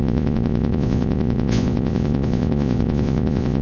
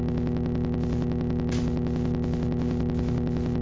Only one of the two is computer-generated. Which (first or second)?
first